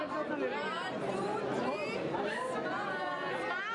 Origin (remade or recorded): recorded